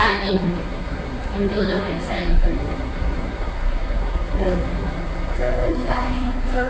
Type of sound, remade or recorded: remade